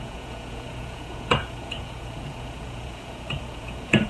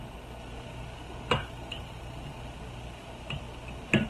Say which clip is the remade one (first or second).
first